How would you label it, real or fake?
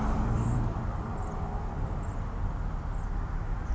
fake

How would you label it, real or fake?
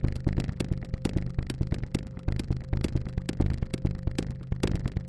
real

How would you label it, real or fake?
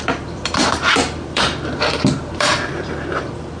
fake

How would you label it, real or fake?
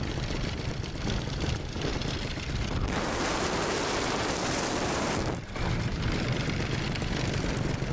fake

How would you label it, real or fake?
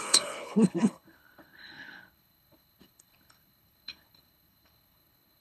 fake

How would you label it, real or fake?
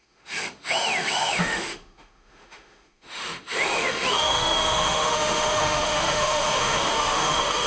fake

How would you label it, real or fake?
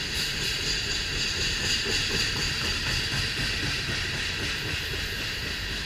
fake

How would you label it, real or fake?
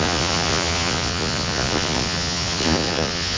fake